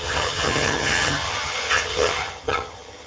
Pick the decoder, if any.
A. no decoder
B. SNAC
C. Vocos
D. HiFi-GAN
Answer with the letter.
D